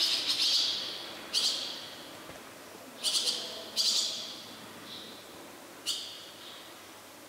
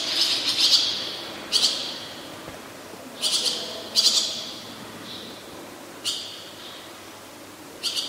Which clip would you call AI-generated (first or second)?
second